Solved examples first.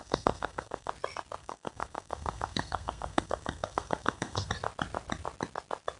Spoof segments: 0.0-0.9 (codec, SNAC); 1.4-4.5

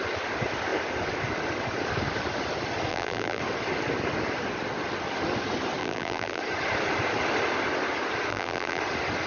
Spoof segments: 2.9-3.4 (vocoder, BigVGAN v2); 5.8-6.4; 8.3-8.8

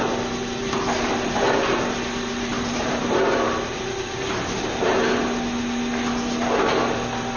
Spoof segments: 2.5-3.9 (vocoder, BigVGAN v2)

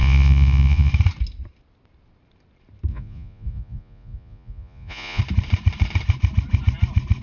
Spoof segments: 0.0-0.9 (vocoder, Vocos); 2.9-5.2

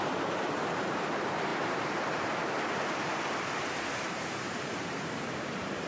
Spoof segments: 0.0-1.5 (vocoder, BigVGAN v2); 3.9-5.9

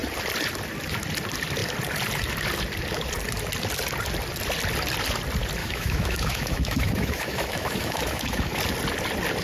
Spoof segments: 5.6-8.6 (autoencoder, DAC-VAE)

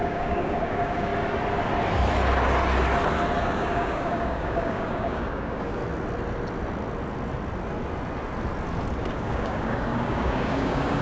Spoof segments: 0.0-1.1 (codec, DAC); 3.4-5.8; 9.1-11.0